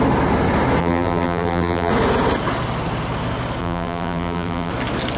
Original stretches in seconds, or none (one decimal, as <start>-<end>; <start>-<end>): 0.0-0.8; 1.9-3.6; 4.7-5.2

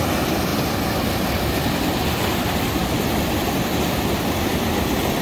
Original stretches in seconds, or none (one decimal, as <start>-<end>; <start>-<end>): 0.0-5.2